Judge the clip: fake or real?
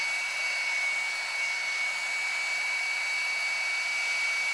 real